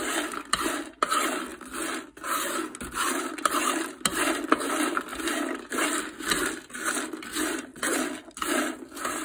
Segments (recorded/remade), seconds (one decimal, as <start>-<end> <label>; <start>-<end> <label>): 0.0-9.2 recorded